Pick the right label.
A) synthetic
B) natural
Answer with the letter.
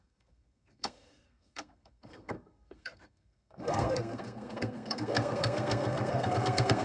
A